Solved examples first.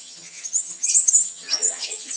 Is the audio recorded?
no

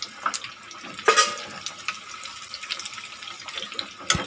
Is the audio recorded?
yes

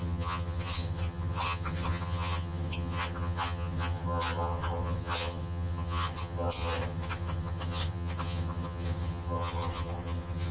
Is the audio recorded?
no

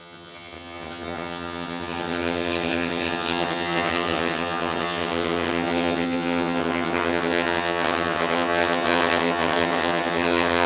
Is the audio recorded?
no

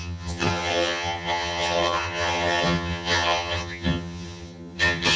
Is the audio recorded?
no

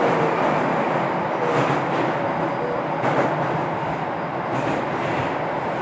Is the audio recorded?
yes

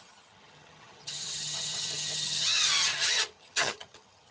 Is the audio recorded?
no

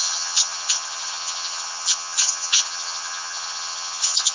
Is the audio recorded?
no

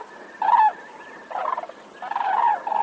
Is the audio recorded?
yes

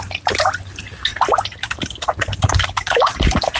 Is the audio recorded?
yes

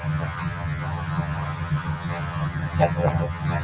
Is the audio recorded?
no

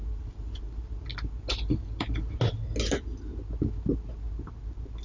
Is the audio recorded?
yes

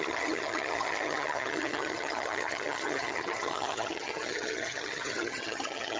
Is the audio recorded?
no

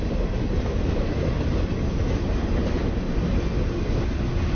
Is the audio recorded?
yes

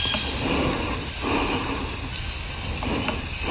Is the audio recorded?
yes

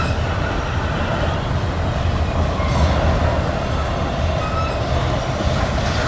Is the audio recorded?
yes